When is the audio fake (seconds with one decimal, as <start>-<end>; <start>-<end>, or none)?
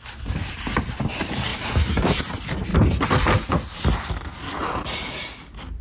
1.5-2.2; 4.6-5.1